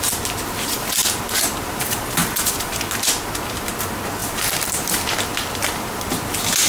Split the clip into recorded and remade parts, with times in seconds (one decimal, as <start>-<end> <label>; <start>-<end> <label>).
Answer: 0.0-4.2 recorded; 4.2-6.0 remade; 6.0-6.7 recorded